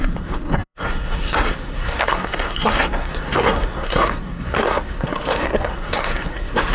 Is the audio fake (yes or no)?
yes